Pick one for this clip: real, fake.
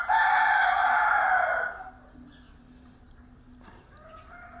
real